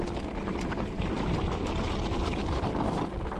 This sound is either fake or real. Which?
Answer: real